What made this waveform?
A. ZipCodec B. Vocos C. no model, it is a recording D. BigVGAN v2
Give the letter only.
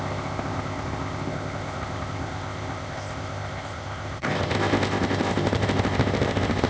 A